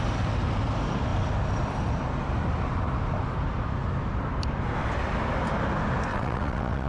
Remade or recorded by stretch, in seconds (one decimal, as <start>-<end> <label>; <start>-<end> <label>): 0.0-6.1 recorded; 6.1-6.9 remade